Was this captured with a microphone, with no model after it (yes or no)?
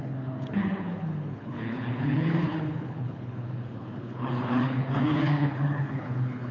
no